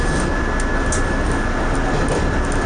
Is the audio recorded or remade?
recorded